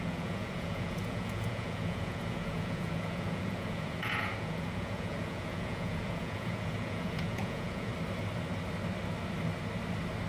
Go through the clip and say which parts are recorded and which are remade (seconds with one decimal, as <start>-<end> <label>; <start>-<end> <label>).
0.0-7.9 remade; 7.9-10.3 recorded